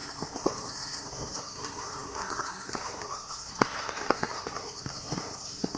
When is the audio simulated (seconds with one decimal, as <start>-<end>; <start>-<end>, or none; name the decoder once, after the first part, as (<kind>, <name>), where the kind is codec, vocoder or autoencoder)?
0.0-5.8 (codec, SNAC)